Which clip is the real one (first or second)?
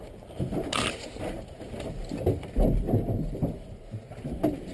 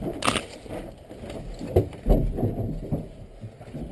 second